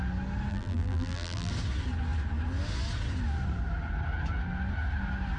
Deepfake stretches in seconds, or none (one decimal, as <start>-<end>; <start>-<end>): 0.5-1.5